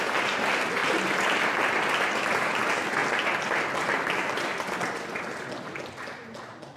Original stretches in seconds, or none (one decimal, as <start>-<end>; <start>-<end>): 0.0-6.8